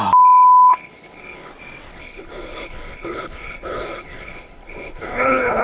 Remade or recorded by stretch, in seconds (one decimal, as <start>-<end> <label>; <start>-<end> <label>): 0.0-0.7 recorded; 0.7-1.5 remade; 1.5-1.9 recorded; 1.9-5.6 remade